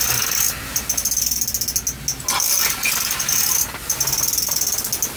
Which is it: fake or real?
real